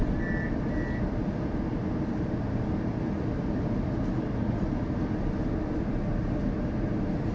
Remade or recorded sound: recorded